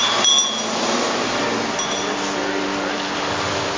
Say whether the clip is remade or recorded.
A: recorded